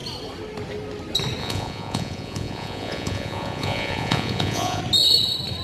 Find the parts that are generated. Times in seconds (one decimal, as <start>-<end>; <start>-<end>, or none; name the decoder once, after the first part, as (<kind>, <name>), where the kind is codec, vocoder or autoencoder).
1.4-4.8 (vocoder, Vocos)